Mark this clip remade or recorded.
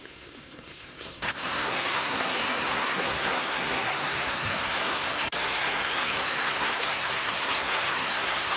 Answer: remade